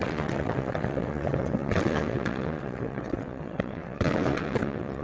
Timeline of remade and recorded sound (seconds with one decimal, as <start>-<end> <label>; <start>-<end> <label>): 0.0-5.0 remade